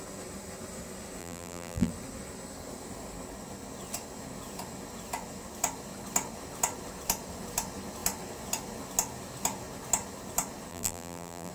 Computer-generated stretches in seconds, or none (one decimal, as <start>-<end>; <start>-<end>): 1.2-1.9; 10.7-11.5